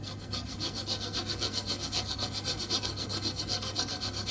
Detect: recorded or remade remade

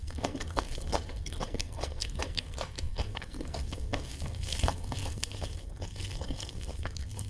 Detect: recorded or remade remade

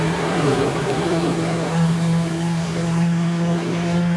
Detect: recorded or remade remade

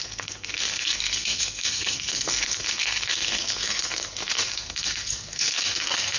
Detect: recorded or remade remade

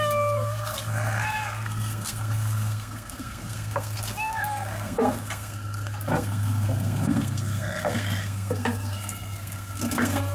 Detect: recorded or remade remade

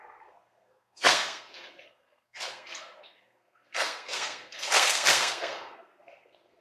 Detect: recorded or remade remade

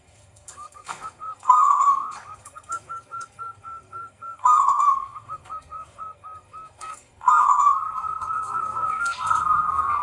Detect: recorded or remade remade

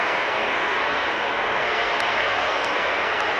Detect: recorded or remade remade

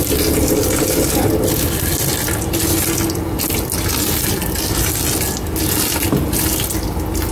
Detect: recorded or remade recorded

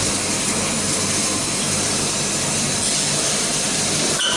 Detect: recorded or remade recorded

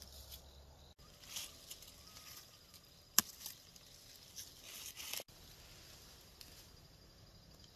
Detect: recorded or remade recorded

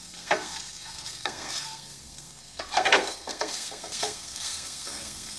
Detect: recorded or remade remade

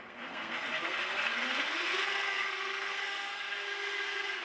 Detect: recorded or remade remade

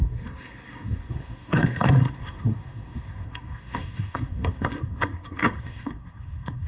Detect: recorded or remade remade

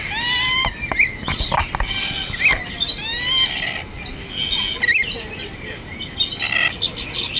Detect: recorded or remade recorded